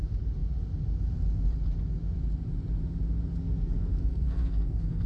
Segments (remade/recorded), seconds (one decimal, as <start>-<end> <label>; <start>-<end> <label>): 0.0-3.4 recorded; 3.4-5.1 remade